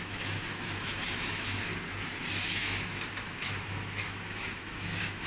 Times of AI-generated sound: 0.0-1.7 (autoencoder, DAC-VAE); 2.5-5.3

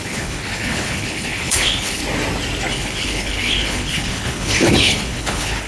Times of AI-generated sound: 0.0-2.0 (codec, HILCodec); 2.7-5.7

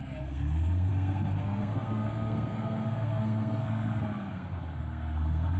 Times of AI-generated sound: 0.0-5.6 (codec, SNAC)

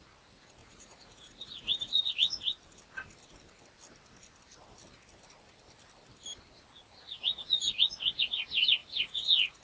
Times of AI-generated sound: 0.6-2.1 (vocoder, Vocos); 8.8-9.6

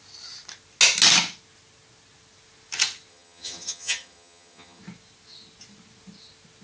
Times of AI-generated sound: 3.1-4.8 (vocoder, HiFi-GAN)